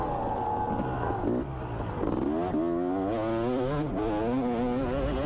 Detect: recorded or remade recorded